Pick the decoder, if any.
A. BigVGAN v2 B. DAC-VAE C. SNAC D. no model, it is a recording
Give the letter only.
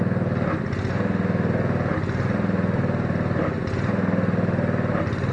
D